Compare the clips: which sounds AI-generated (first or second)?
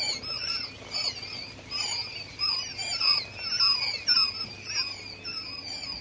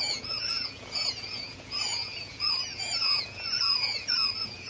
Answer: second